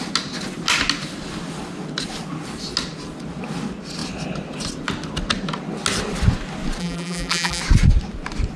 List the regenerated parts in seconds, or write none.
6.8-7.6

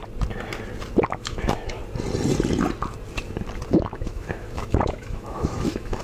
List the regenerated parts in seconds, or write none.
1.1-1.8; 3.7-6.0

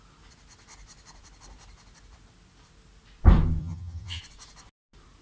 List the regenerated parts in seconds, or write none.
3.6-4.2

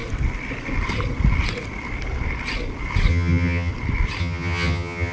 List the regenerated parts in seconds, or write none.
3.1-3.7; 4.2-5.1

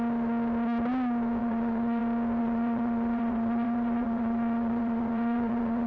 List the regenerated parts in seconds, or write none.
1.4-2.0; 2.4-5.9

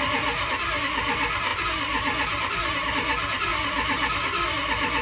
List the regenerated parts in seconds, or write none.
none